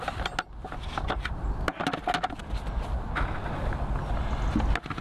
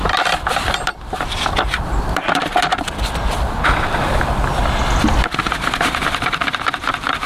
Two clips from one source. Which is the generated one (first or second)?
second